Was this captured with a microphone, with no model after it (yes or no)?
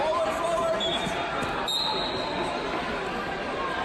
yes